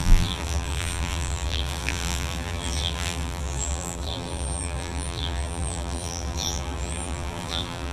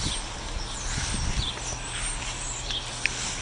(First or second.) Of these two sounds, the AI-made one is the first